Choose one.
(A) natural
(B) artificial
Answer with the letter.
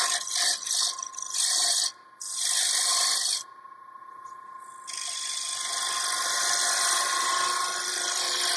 A